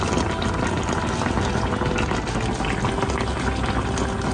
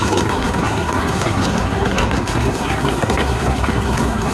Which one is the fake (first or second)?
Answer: second